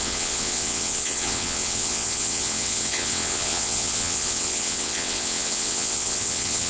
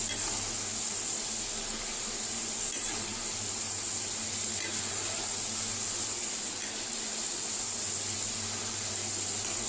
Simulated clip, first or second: first